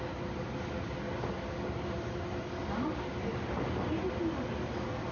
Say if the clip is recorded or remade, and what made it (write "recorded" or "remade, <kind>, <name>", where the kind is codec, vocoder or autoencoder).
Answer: recorded